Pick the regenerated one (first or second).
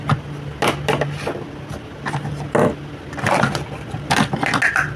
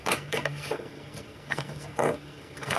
second